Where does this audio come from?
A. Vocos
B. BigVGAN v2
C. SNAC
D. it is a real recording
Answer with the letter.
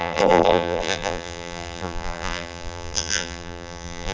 B